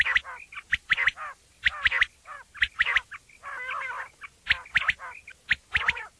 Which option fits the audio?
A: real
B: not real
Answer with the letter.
A